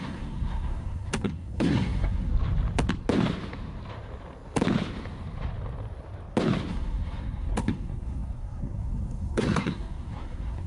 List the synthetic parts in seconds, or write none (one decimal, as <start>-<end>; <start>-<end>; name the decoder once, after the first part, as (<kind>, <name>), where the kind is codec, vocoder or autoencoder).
0.0-2.3 (codec, SNAC); 6.7-10.7